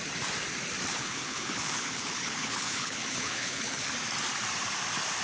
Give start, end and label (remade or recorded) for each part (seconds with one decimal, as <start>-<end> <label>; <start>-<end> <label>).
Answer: 0.0-0.9 recorded; 0.9-3.8 remade; 3.8-5.2 recorded